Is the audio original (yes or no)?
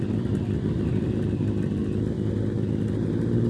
yes